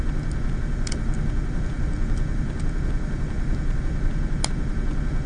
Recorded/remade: recorded